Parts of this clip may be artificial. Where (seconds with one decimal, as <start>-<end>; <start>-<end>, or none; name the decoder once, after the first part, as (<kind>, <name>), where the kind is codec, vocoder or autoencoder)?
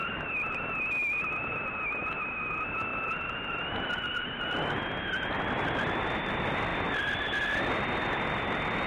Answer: none